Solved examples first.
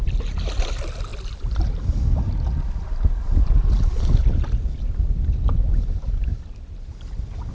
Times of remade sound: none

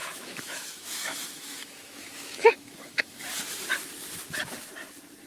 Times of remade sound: 0.0-3.2

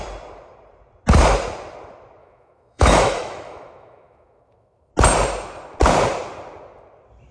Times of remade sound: 2.2-4.9

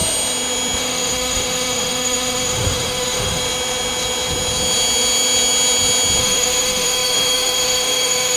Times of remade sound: 0.8-3.4; 6.2-8.4

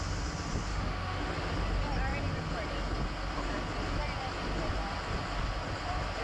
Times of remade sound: 0.7-1.3

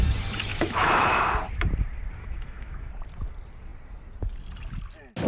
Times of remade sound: 0.5-1.2; 2.2-2.9

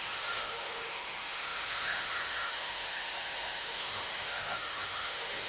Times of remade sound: 0.0-5.5

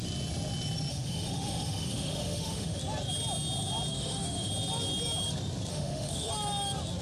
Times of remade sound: 0.9-2.8; 3.9-4.5; 5.7-6.3